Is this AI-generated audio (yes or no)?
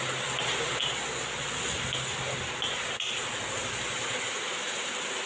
no